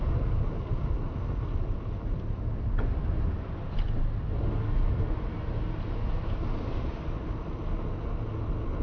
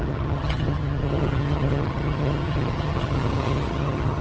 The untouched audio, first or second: first